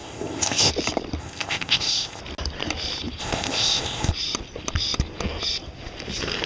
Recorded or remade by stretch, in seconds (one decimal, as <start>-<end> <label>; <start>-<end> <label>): 0.0-0.7 remade; 0.7-1.2 recorded; 1.2-2.2 remade; 2.2-3.2 recorded; 3.2-4.1 remade; 4.1-6.5 recorded